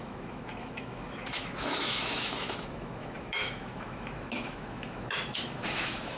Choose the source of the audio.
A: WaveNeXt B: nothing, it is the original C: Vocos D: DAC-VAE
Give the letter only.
D